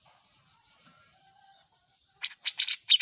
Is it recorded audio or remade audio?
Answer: remade